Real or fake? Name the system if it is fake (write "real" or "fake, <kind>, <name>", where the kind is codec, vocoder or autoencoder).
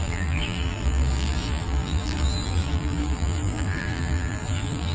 fake, vocoder, BigVGAN v2